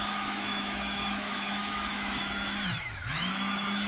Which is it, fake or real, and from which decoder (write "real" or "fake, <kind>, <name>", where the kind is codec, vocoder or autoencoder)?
fake, autoencoder, DAC-VAE